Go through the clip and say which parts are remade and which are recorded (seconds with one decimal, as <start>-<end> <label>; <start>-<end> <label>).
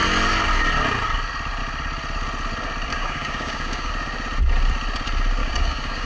0.0-2.9 recorded; 2.9-3.9 remade; 3.9-5.4 recorded; 5.4-6.1 remade